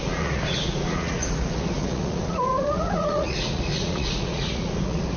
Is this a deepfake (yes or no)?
yes